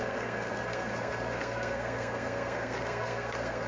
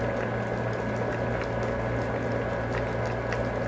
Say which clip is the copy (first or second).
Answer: first